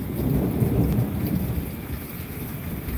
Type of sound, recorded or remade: remade